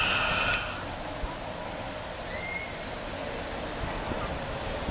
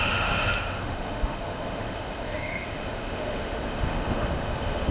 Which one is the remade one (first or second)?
second